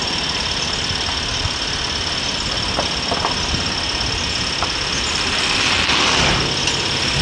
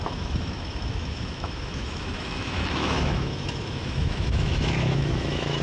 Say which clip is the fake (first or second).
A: second